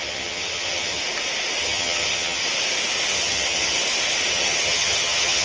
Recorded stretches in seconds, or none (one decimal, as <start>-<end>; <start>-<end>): 1.0-1.6; 2.4-3.1; 3.8-4.3